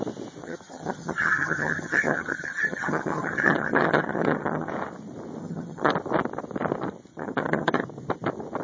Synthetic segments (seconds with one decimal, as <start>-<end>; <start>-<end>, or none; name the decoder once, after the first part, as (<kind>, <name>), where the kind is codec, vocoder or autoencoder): 0.4-4.7 (vocoder, HiFi-GAN); 5.4-5.9; 7.1-7.8